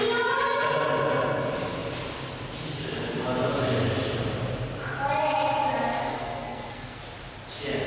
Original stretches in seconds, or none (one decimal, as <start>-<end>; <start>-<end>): 0.0-6.1; 7.0-7.9